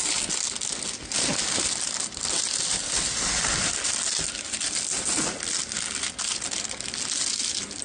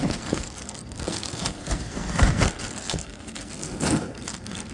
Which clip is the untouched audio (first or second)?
first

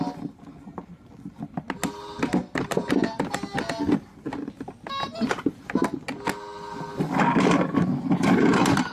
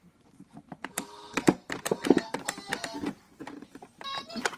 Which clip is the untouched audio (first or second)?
first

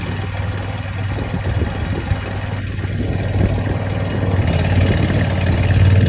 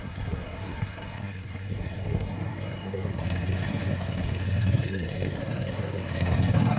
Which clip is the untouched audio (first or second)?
first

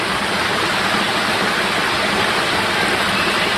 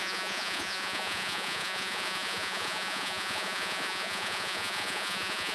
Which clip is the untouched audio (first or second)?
first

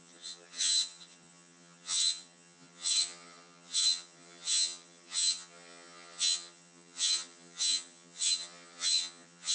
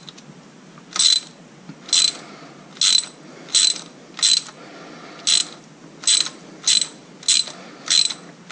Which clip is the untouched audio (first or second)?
second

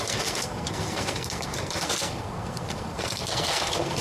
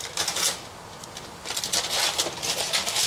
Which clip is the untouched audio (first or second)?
second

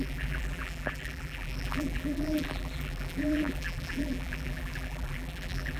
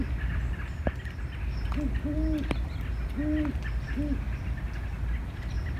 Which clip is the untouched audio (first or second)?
second